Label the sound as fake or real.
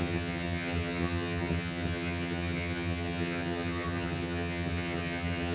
fake